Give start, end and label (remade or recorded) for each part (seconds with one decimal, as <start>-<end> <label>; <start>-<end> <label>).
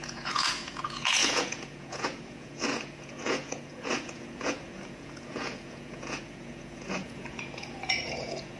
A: 0.0-8.6 remade